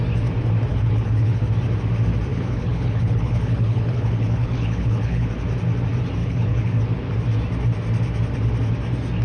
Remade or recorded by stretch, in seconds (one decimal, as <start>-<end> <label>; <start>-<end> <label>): 0.0-0.7 recorded; 0.7-1.5 remade; 1.5-2.3 recorded; 2.3-5.3 remade; 5.3-6.2 recorded; 6.2-6.8 remade; 6.8-9.2 recorded